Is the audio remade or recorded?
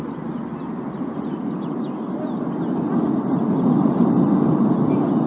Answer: recorded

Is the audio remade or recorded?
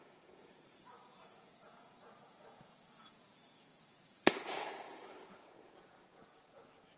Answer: remade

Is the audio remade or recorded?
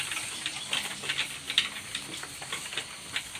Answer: recorded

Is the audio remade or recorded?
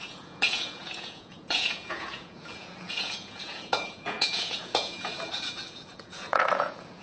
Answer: remade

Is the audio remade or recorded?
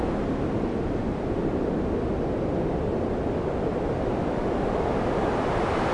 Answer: recorded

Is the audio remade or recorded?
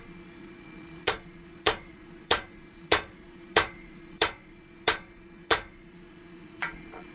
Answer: remade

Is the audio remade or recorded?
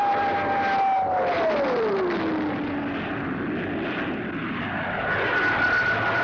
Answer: recorded